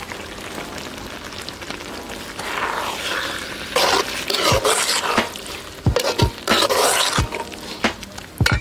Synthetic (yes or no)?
no